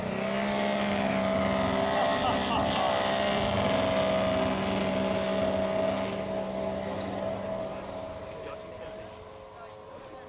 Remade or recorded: recorded